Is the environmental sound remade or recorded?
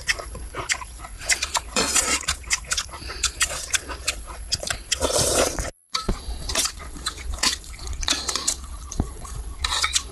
remade